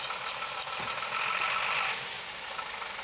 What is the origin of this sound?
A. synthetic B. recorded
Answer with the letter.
B